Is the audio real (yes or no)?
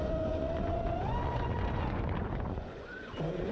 no